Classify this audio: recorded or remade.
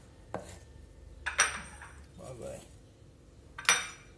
recorded